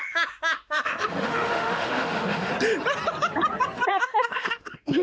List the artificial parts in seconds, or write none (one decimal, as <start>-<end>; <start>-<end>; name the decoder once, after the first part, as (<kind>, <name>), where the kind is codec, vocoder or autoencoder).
0.0-2.5 (autoencoder, DAC-VAE); 3.9-5.0